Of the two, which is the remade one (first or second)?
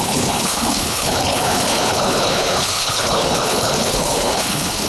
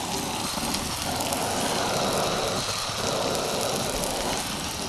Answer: first